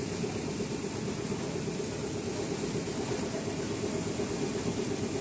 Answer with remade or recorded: recorded